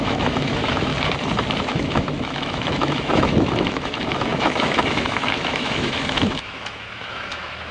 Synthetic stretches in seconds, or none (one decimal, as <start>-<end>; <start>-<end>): 0.0-0.9; 1.6-7.7